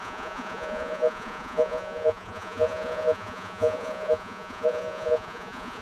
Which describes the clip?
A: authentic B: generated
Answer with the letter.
B